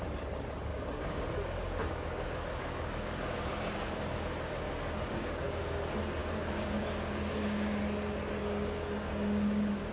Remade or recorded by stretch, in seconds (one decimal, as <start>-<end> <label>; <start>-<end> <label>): 0.0-0.7 recorded; 0.7-5.6 remade; 5.6-6.2 recorded; 6.2-7.8 remade; 7.8-8.4 recorded; 8.4-9.9 remade